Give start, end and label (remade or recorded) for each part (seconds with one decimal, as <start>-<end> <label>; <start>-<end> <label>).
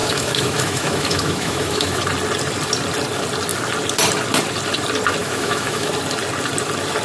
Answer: 0.0-2.0 remade; 2.0-5.2 recorded; 5.2-5.9 remade; 5.9-7.0 recorded